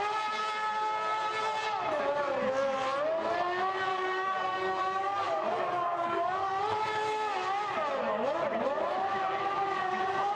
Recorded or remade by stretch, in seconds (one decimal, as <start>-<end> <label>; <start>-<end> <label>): 0.0-3.9 recorded; 3.9-6.6 remade; 6.6-10.4 recorded